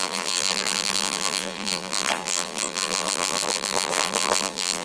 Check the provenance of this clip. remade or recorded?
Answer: remade